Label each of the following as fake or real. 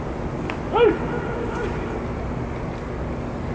real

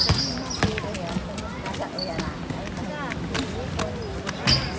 real